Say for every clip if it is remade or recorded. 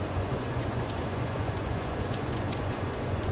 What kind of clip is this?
remade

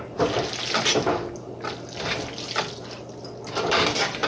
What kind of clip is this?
recorded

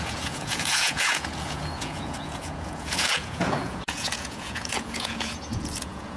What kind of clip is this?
remade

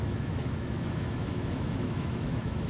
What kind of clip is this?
remade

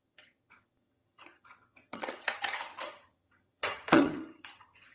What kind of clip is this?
remade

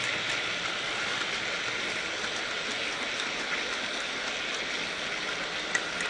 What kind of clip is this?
recorded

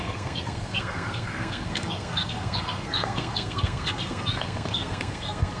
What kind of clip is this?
remade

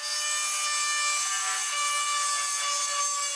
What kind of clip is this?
recorded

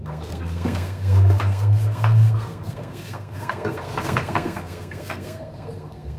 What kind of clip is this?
remade